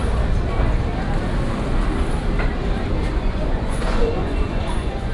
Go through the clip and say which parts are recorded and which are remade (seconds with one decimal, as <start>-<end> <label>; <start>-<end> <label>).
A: 0.0-3.1 recorded; 3.1-5.1 remade